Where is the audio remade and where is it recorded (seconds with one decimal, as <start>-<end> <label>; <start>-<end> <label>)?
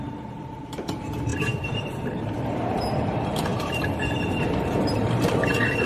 0.0-1.3 remade; 1.3-2.0 recorded; 2.0-3.5 remade; 3.5-4.3 recorded; 4.3-5.9 remade